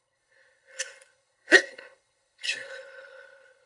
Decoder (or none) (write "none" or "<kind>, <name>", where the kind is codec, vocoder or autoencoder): codec, HILCodec